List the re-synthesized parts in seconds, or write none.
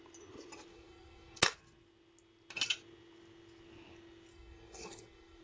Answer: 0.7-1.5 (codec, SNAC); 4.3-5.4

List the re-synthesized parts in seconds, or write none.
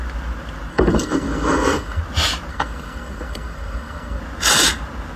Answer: 0.7-2.0 (codec, SNAC); 2.5-4.2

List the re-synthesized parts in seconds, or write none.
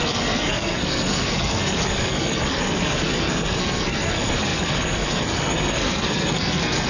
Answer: 0.0-6.9 (codec, SNAC)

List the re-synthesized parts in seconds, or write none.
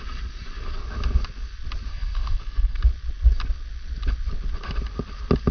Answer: 1.9-2.8 (codec, SNAC)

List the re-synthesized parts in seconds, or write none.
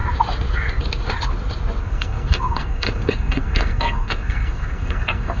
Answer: 1.8-5.4 (codec, SNAC)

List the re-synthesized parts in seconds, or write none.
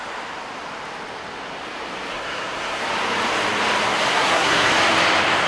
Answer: 2.1-2.8 (codec, SNAC); 4.1-4.7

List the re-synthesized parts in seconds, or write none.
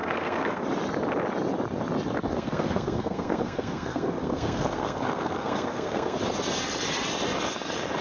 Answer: 0.0-0.6 (codec, SNAC); 2.3-6.2